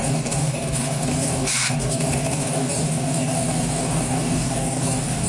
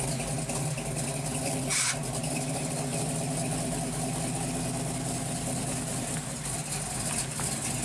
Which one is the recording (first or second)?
second